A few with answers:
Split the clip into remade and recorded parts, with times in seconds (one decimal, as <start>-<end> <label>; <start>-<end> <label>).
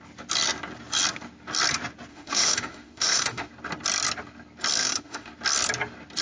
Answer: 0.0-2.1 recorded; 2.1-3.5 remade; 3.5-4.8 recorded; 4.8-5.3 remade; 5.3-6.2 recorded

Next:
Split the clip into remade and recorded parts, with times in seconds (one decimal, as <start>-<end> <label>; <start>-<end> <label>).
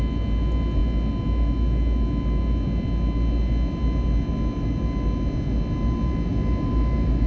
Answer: 0.0-7.3 recorded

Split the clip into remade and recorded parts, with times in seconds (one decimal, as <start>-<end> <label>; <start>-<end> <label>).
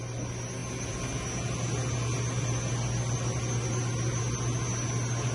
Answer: 0.0-5.3 recorded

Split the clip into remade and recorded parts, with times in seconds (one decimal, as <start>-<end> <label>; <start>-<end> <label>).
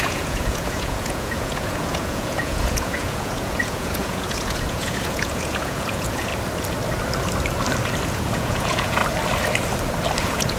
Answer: 0.0-6.3 remade; 6.3-8.1 recorded; 8.1-9.0 remade; 9.0-10.2 recorded; 10.2-10.6 remade